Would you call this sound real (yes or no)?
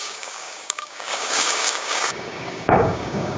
no